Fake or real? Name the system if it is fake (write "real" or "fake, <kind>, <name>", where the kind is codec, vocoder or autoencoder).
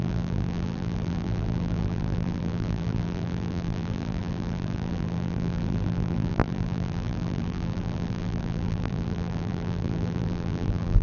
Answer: fake, vocoder, BigVGAN v2